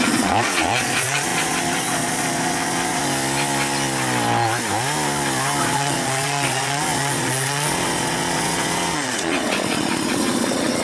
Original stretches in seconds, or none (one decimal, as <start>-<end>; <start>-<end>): 3.0-5.6